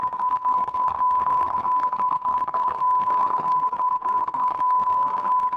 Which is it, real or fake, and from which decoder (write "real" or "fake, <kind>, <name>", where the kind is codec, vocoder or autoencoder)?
fake, codec, SNAC